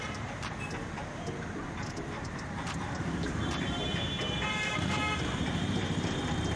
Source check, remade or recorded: remade